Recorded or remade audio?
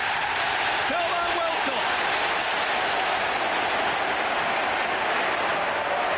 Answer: recorded